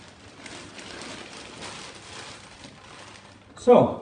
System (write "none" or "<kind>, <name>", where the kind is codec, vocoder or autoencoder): vocoder, BigVGAN v2